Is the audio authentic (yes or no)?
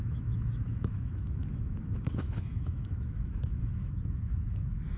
no